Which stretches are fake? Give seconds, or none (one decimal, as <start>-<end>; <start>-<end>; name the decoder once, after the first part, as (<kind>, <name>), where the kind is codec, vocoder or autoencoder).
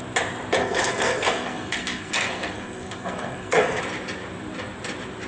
0.6-3.8 (codec, SNAC)